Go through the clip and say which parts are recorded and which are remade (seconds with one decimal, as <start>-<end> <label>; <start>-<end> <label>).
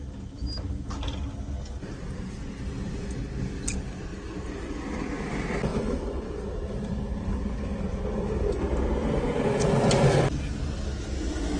0.0-1.8 recorded; 1.8-2.6 remade; 2.6-4.1 recorded; 4.1-4.8 remade; 4.8-5.7 recorded; 5.7-6.5 remade; 6.5-11.6 recorded